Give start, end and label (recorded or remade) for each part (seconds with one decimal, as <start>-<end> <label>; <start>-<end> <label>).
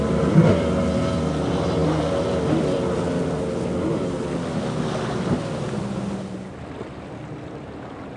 0.0-1.8 recorded; 1.8-3.0 remade; 3.0-8.2 recorded